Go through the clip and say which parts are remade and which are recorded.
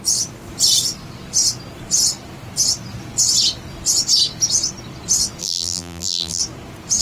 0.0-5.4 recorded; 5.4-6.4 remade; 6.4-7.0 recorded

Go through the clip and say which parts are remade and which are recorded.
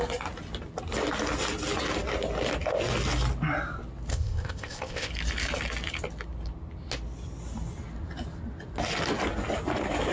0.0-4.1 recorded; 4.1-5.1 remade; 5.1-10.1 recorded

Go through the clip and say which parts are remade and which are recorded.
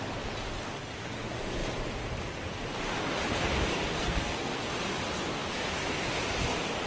0.0-3.9 recorded; 3.9-4.7 remade; 4.7-6.9 recorded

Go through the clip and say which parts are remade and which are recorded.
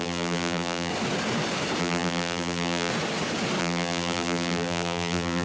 0.0-0.9 remade; 0.9-1.8 recorded; 1.8-2.9 remade; 2.9-3.6 recorded; 3.6-5.4 remade